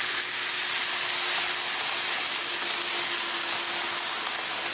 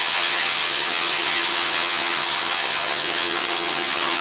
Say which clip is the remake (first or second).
second